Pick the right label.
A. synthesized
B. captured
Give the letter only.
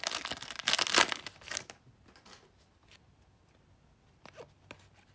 B